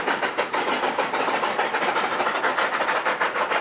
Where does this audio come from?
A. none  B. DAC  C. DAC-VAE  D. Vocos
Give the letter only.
A